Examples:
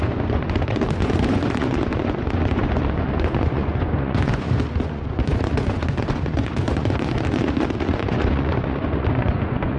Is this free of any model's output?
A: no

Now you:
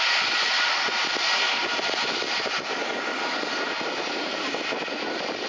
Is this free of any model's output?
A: yes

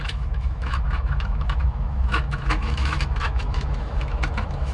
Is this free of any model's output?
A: no